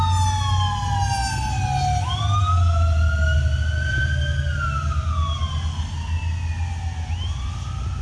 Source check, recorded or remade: recorded